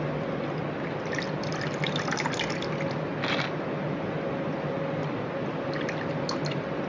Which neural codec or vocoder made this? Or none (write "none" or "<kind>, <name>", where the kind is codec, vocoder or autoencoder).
none